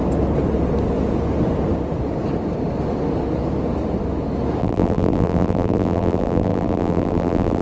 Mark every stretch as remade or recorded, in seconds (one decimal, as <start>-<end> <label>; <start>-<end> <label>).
0.0-4.6 recorded; 4.6-7.6 remade

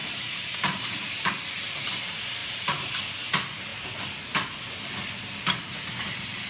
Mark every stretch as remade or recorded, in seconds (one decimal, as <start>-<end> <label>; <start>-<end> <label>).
0.0-1.1 remade; 1.1-2.4 recorded; 2.4-3.0 remade; 3.0-6.5 recorded

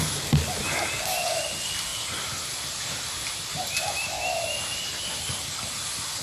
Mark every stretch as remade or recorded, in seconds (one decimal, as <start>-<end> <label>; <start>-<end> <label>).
0.0-6.2 recorded